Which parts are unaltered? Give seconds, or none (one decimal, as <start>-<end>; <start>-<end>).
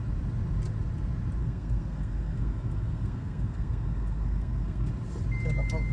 0.0-1.4; 4.9-5.9